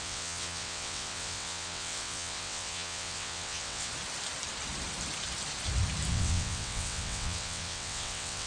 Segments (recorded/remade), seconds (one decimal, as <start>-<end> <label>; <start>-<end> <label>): 0.0-3.9 remade; 3.9-6.1 recorded; 6.1-8.5 remade